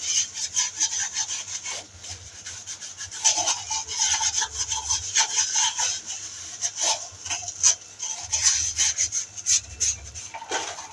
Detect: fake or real real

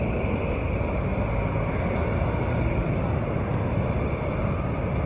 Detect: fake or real real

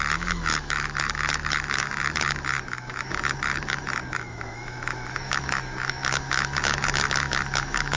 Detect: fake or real fake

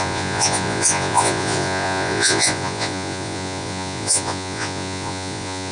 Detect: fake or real fake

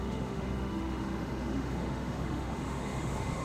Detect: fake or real fake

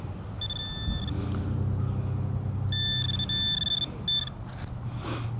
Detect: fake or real real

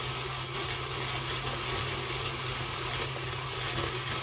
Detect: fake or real real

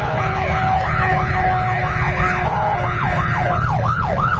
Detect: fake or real fake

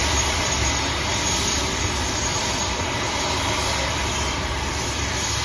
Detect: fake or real fake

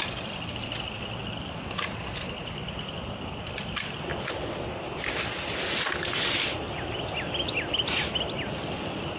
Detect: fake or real real